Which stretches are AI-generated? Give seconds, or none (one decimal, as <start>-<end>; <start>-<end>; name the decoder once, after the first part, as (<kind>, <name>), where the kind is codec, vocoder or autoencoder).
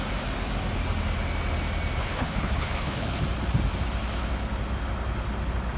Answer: 2.0-3.2 (codec, HILCodec)